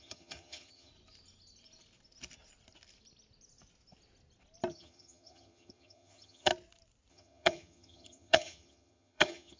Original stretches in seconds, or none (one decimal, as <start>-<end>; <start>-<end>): 0.9-4.7; 6.5-7.1